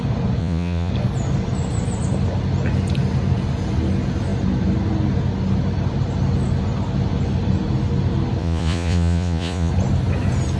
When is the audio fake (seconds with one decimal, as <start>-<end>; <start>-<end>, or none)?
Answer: 0.4-0.9; 8.4-9.7